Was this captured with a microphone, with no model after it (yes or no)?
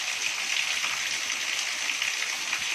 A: yes